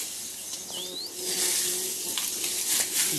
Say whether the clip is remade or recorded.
recorded